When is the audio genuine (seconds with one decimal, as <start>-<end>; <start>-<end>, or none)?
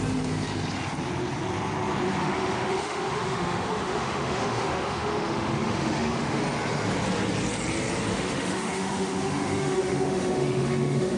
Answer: 0.0-2.2; 6.4-8.1